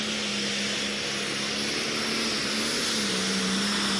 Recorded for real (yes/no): yes